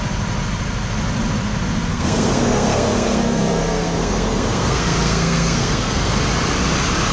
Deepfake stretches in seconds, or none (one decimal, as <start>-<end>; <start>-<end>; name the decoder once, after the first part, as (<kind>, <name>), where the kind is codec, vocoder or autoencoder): 1.9-6.2 (codec, SNAC)